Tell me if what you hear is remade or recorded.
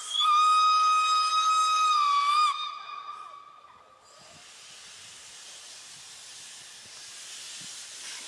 recorded